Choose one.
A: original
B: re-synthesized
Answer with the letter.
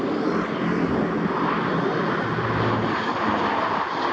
A